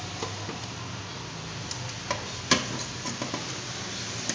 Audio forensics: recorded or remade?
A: recorded